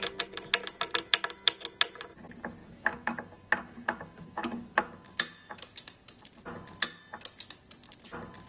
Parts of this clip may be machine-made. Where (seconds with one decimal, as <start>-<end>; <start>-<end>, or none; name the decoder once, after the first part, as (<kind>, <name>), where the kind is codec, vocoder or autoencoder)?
2.6-6.2 (autoencoder, DAC-VAE)